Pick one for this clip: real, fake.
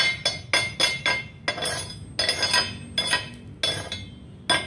real